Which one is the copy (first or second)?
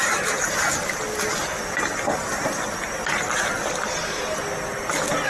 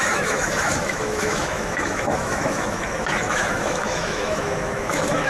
second